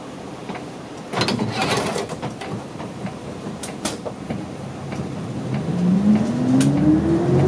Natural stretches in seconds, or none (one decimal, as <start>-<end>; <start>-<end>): 0.0-0.4; 1.0-1.6; 6.1-7.5